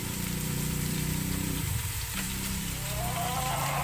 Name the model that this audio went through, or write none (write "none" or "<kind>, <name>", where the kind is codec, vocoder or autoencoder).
vocoder, BigVGAN v2